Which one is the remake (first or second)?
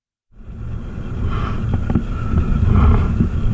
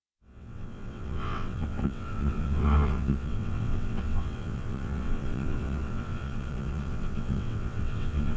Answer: second